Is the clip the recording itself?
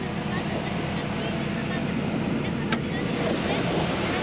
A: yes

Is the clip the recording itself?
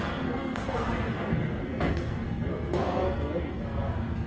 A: no